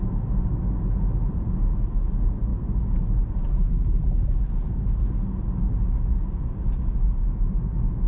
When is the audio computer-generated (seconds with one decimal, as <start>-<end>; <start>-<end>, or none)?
none